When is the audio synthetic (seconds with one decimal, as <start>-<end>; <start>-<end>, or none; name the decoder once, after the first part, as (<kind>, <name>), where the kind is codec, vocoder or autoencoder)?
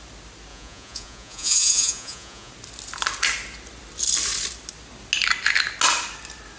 0.5-2.5 (vocoder, Vocos)